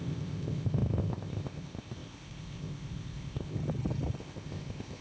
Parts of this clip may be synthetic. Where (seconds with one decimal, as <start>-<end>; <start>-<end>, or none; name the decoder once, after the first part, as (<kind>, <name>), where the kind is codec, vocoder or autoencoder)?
0.0-3.6 (codec, ZipCodec); 4.2-5.0